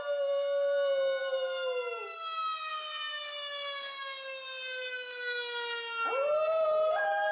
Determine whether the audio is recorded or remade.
recorded